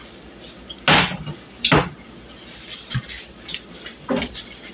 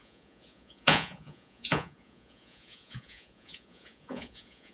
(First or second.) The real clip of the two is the first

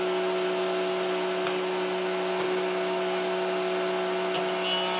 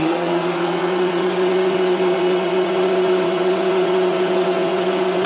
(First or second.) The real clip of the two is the first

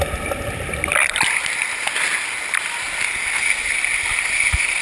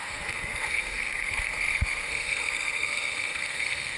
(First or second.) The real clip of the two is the first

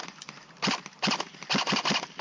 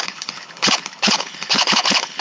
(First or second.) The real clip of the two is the first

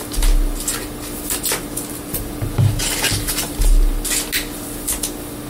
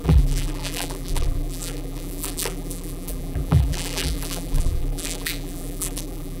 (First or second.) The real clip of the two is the first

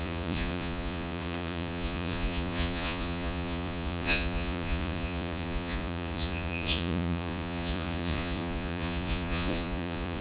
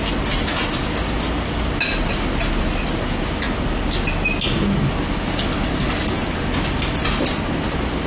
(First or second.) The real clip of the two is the second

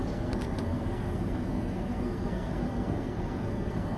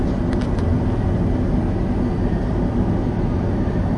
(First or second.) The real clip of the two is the second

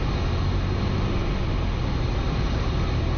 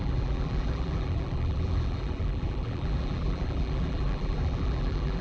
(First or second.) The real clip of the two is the first